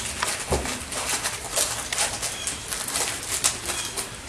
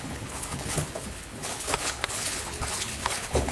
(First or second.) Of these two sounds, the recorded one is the first